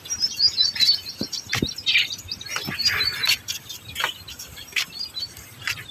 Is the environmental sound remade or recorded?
recorded